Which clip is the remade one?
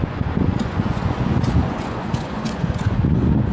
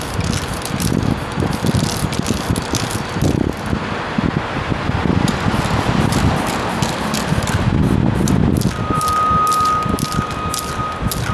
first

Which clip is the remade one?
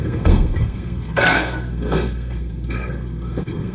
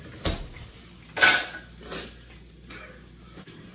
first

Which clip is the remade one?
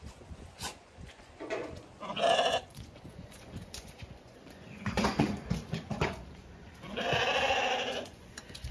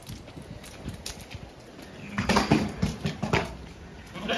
first